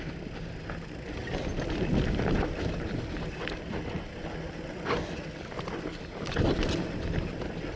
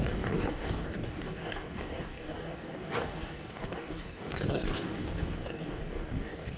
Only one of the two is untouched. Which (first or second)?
first